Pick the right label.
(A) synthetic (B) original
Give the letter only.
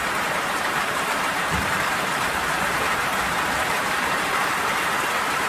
A